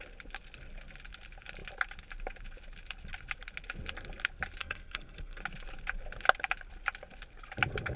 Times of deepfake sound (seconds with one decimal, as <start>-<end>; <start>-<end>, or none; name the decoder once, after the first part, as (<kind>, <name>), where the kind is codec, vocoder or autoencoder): 4.6-5.4 (codec, SNAC)